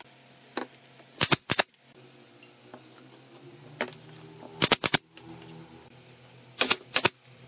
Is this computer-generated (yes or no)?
no